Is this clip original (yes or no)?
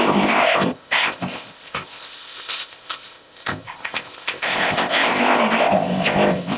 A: no